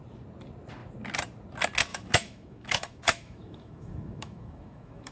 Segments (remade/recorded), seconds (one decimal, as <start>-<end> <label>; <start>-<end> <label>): 0.0-1.9 recorded; 1.9-5.1 remade